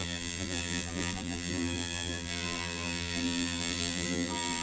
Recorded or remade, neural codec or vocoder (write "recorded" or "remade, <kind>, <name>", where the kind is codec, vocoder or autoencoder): remade, vocoder, BigVGAN v2